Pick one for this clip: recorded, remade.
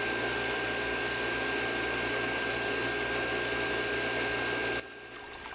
recorded